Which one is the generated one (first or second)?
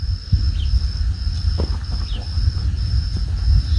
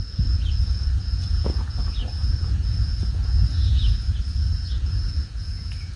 second